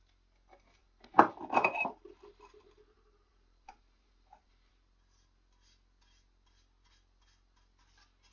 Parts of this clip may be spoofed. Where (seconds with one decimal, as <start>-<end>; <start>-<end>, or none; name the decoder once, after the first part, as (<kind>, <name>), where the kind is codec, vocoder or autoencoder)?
0.8-4.7 (vocoder, BigVGAN v2)